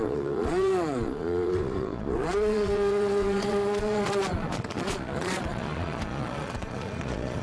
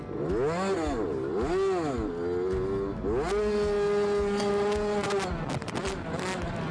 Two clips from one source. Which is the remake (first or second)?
first